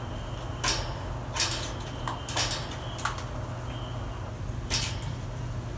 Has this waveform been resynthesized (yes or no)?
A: no